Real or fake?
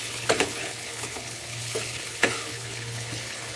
fake